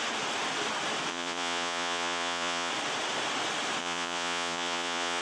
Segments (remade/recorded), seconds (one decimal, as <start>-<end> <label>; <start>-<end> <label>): 0.0-1.1 recorded; 1.1-2.7 remade; 2.7-3.8 recorded; 3.8-5.2 remade